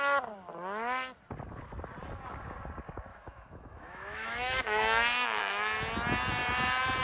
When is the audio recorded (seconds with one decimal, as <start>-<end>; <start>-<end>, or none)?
0.0-3.1; 5.4-7.0